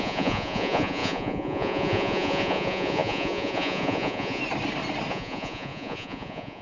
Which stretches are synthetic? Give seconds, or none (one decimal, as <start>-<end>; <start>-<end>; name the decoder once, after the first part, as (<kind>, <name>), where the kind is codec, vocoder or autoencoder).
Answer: 0.0-4.4 (vocoder, Vocos); 5.1-6.6